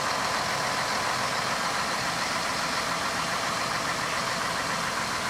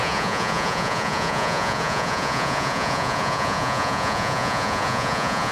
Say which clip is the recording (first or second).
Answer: first